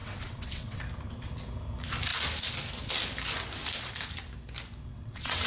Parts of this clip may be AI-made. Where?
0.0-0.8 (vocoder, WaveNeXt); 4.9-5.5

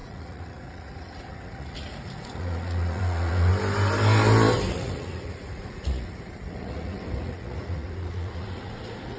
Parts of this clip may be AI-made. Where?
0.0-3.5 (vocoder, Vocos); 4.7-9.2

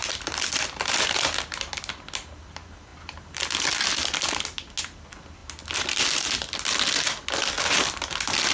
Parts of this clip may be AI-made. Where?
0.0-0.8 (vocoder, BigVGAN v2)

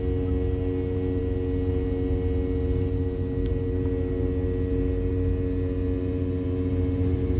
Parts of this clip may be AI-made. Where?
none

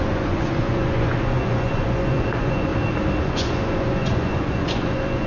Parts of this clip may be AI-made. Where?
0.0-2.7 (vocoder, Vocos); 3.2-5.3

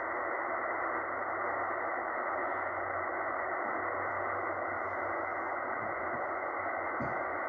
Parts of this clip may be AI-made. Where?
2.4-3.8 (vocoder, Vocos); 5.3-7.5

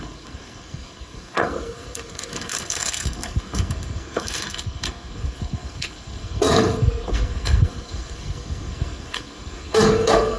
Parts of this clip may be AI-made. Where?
0.0-10.4 (codec, SNAC)